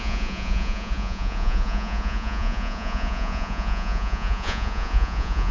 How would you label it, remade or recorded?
remade